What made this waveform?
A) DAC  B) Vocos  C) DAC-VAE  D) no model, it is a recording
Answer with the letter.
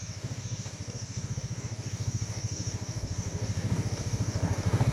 A